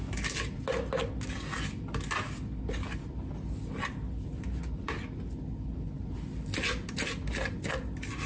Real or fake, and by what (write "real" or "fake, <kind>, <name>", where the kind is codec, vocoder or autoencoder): real